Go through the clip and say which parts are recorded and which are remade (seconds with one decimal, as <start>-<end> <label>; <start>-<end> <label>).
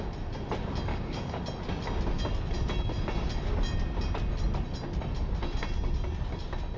0.0-0.9 recorded; 0.9-1.4 remade; 1.4-6.8 recorded